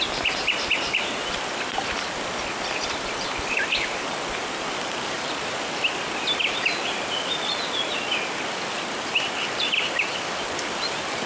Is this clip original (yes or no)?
no